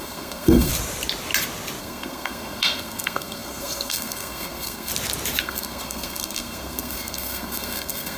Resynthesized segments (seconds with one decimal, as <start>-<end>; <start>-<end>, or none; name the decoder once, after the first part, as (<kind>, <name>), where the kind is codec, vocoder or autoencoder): 0.0-0.7 (codec, SNAC); 1.8-4.9; 5.4-8.2